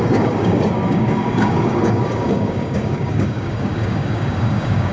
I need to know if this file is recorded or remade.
remade